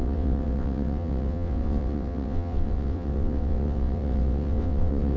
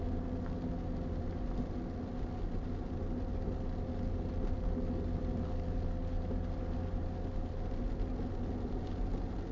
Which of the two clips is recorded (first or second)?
second